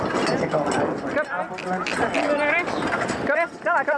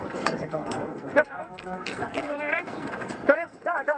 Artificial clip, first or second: second